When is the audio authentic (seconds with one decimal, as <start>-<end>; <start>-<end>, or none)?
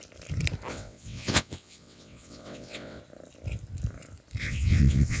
0.0-0.7; 3.0-4.4